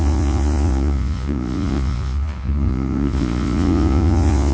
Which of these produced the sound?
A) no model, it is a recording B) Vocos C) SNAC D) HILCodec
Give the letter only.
B